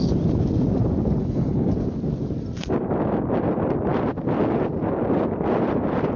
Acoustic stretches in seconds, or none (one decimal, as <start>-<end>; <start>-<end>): 0.0-1.2; 1.7-6.2